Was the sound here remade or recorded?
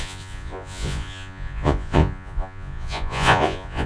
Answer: remade